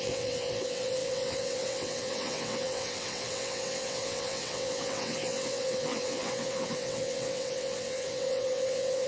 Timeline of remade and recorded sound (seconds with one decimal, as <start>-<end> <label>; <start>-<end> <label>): 0.0-9.1 remade